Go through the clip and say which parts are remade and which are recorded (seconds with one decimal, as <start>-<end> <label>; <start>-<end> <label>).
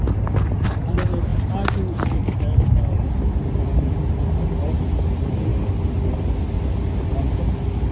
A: 0.0-7.9 recorded